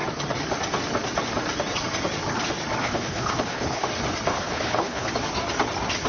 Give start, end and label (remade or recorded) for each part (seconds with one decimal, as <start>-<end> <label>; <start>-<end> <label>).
0.0-2.8 recorded; 2.8-3.9 remade; 3.9-4.3 recorded; 4.3-5.1 remade; 5.1-6.1 recorded